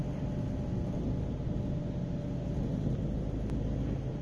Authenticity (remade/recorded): recorded